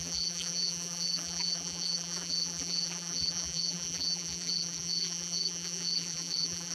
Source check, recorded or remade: remade